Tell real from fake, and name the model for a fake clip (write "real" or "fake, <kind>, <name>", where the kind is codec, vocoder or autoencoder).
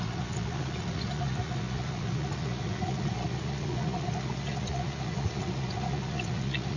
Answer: fake, vocoder, Vocos